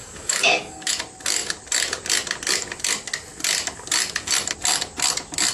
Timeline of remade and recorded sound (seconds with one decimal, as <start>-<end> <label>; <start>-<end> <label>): 0.0-0.9 remade; 0.9-5.5 recorded